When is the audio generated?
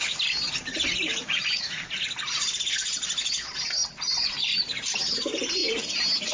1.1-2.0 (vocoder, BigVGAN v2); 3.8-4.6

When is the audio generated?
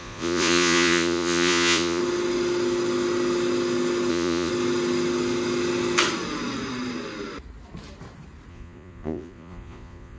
0.0-2.0 (vocoder, Vocos); 4.1-4.5; 8.5-10.2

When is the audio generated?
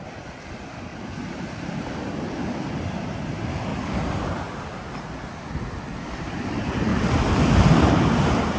0.0-3.7 (vocoder, BigVGAN v2); 5.5-8.6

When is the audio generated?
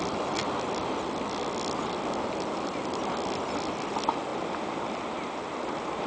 none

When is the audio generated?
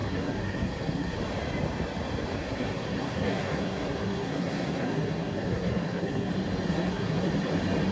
0.0-1.2 (codec, SNAC); 2.4-6.3; 6.7-7.3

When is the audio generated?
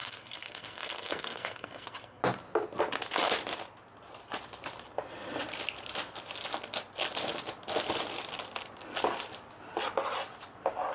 0.0-2.2 (codec, SNAC)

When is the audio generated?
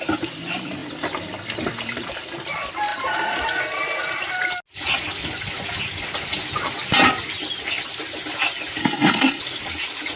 8.8-9.4 (codec, SNAC)